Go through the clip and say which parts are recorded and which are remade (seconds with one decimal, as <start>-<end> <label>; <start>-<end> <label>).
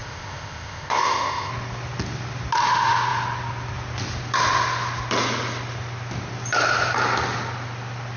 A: 0.0-1.5 remade; 1.5-8.2 recorded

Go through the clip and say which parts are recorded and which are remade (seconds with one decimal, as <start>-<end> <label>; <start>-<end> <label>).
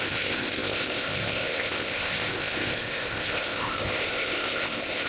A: 0.0-5.1 remade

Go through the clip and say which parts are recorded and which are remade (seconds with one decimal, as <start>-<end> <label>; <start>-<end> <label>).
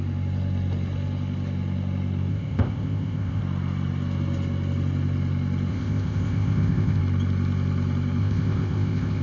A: 0.0-2.3 recorded; 2.3-3.4 remade; 3.4-5.7 recorded; 5.7-7.0 remade; 7.0-8.2 recorded; 8.2-9.2 remade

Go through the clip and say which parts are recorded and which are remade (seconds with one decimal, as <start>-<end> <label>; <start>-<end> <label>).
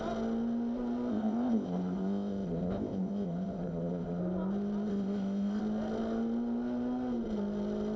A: 0.0-1.1 recorded; 1.1-4.2 remade; 4.2-4.9 recorded; 4.9-5.6 remade; 5.6-8.0 recorded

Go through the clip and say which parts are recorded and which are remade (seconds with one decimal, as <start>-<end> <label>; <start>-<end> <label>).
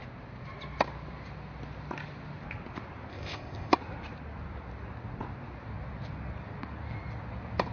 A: 0.0-3.1 recorded; 3.1-3.7 remade; 3.7-7.7 recorded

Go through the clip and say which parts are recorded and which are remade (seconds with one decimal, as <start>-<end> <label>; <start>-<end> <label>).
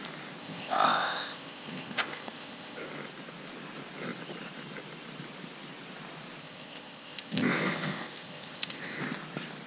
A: 0.0-0.4 recorded; 0.4-2.9 remade; 2.9-6.4 recorded; 6.4-9.0 remade; 9.0-9.7 recorded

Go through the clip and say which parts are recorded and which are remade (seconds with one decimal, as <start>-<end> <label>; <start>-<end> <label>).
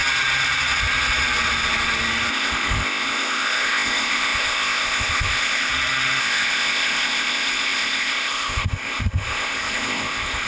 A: 0.0-2.3 recorded; 2.3-5.7 remade; 5.7-6.2 recorded; 6.2-10.5 remade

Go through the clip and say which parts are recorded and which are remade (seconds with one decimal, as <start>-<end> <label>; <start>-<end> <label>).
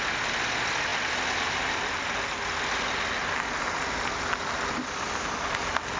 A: 0.0-6.0 recorded